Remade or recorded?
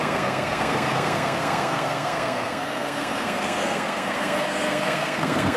remade